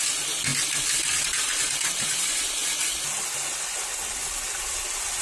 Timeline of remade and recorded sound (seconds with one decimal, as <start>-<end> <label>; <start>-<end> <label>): 0.0-5.2 recorded